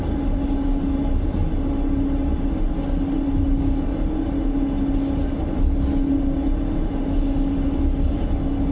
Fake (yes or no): no